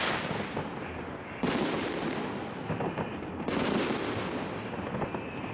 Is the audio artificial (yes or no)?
no